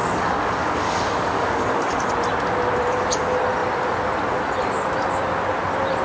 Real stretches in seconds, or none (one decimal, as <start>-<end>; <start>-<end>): 2.1-6.0